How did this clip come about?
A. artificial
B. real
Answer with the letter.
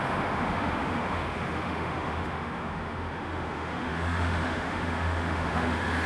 A